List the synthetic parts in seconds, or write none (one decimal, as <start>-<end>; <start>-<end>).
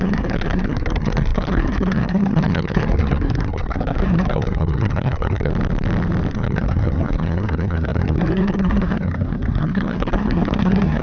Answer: 0.0-5.5; 6.3-11.0